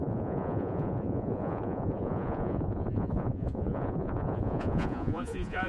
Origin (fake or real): fake